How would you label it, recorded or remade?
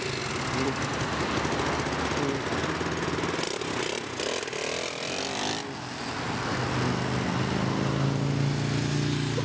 recorded